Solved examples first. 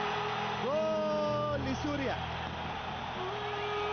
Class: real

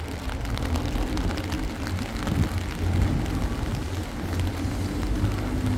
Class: real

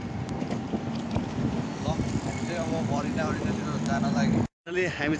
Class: fake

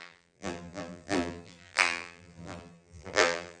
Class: fake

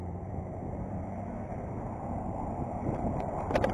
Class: fake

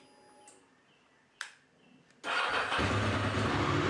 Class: real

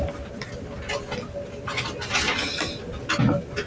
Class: real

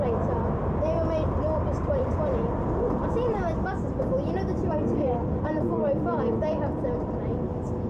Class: fake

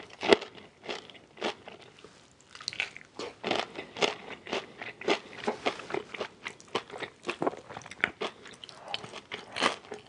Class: real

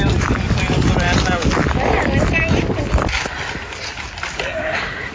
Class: real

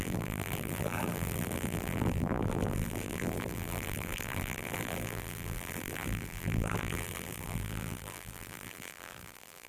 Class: fake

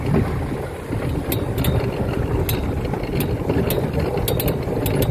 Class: real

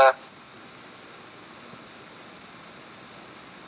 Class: real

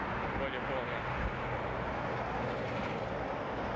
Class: real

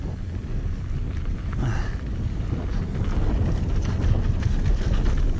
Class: real